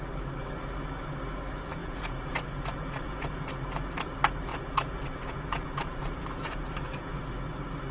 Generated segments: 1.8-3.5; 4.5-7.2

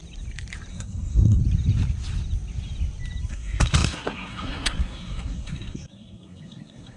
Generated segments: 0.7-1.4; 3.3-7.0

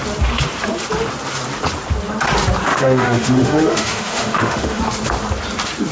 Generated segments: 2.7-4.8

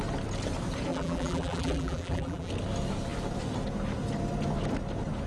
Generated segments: 0.9-2.5

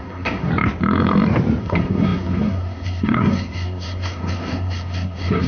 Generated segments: 0.0-0.5; 1.6-5.5

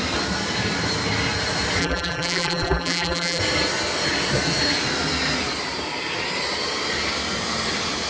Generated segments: 1.8-3.4